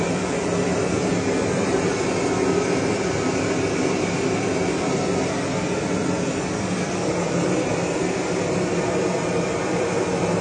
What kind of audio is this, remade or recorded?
recorded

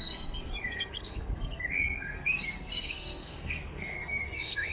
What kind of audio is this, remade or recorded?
remade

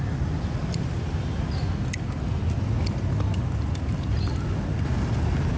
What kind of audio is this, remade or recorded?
recorded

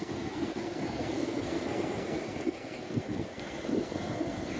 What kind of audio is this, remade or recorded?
remade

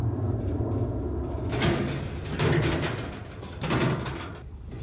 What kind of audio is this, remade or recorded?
recorded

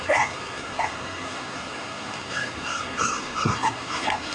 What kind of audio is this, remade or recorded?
remade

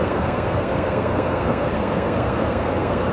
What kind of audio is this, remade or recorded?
remade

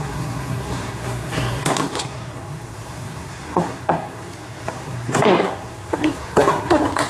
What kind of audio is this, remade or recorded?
remade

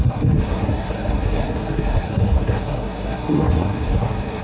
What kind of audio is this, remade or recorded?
remade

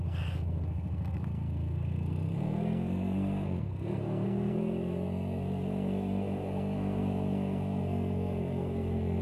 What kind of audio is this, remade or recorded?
remade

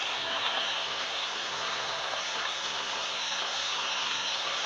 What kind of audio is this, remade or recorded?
remade